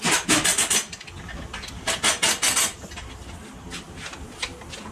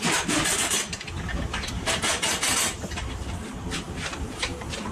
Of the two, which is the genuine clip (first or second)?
first